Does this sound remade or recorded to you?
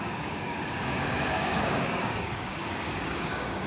remade